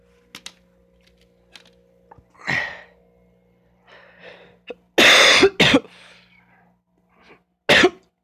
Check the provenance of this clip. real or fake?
real